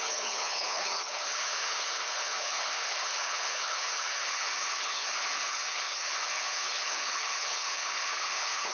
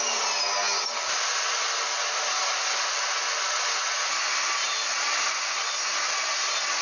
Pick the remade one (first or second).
first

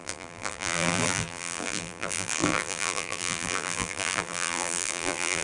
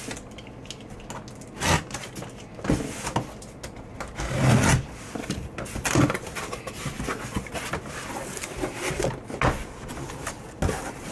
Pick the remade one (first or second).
first